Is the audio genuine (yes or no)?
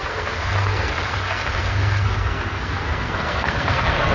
no